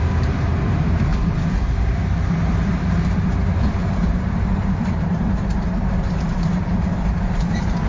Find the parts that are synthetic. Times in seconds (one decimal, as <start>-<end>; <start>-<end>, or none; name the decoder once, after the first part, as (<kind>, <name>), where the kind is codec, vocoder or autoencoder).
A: 0.0-1.1 (vocoder, BigVGAN v2); 2.4-7.9